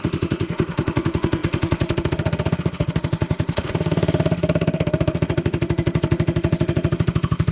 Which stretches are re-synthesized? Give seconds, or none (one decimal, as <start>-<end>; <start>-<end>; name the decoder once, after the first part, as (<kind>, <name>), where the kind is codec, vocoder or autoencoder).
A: 0.0-7.5 (autoencoder, DAC-VAE)